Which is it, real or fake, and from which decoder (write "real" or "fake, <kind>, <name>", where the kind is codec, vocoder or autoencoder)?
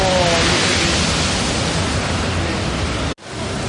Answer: real